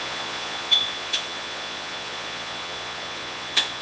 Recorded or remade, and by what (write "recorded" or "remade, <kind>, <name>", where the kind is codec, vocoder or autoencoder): remade, vocoder, Vocos